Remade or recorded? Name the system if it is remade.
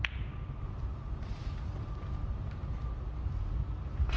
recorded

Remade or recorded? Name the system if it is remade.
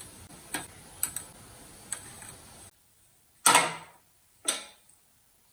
recorded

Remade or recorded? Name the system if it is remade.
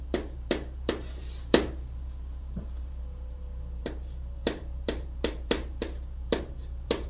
remade, vocoder, BigVGAN v2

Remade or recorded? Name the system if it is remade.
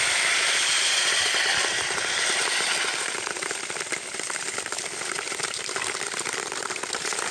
recorded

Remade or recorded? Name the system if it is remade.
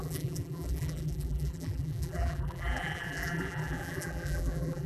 remade, vocoder, BigVGAN v2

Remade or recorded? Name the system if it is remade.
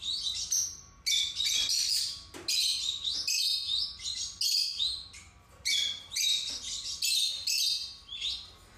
recorded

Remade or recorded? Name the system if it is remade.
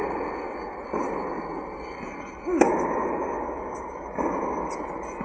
recorded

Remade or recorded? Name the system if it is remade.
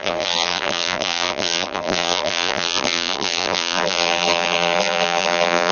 remade, vocoder, BigVGAN v2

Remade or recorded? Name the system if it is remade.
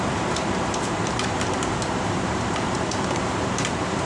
remade, vocoder, BigVGAN v2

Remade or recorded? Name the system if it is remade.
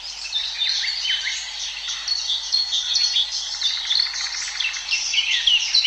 remade, vocoder, BigVGAN v2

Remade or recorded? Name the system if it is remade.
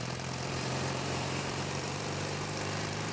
remade, vocoder, BigVGAN v2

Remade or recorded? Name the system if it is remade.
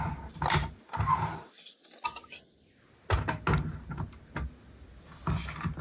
recorded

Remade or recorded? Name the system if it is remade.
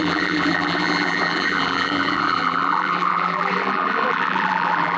remade, vocoder, BigVGAN v2